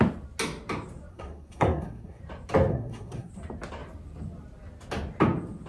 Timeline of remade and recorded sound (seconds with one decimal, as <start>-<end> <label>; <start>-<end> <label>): 0.0-1.1 recorded; 1.1-2.2 remade; 2.2-2.7 recorded; 2.7-3.3 remade; 3.3-5.7 recorded